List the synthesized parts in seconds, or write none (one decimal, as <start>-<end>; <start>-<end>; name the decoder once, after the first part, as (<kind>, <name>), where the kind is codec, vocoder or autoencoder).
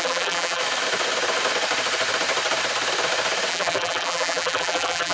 0.0-0.6 (vocoder, BigVGAN v2); 3.5-5.1